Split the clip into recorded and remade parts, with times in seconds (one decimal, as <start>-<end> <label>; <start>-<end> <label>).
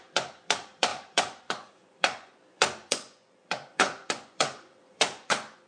0.0-5.7 remade